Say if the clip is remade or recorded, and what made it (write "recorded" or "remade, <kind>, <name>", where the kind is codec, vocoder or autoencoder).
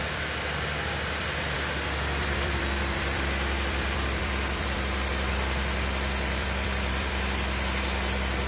remade, vocoder, BigVGAN v2